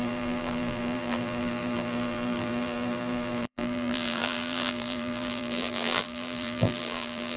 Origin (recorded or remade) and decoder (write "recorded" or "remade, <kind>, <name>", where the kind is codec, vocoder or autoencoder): remade, vocoder, BigVGAN v2